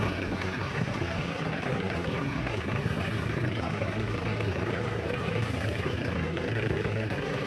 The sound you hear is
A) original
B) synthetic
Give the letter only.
B